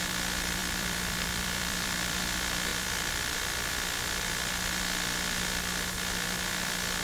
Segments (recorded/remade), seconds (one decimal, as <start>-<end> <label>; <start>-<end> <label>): 0.0-0.6 recorded; 0.6-2.2 remade; 2.2-2.7 recorded; 2.7-3.7 remade; 3.7-7.0 recorded